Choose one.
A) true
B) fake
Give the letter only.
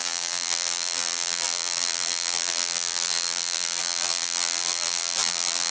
B